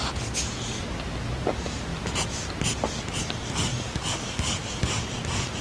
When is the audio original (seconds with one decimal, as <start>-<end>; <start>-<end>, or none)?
0.0-3.7; 4.9-5.6